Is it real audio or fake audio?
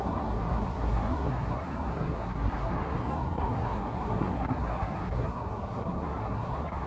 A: fake